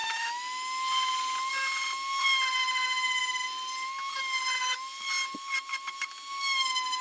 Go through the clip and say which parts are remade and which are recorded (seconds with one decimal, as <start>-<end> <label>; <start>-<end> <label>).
0.0-7.0 recorded